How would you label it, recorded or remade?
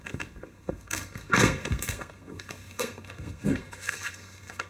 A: remade